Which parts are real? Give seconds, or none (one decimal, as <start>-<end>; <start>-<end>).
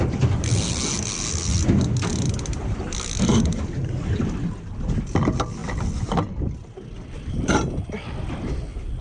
0.0-9.0